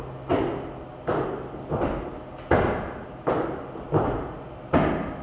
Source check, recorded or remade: recorded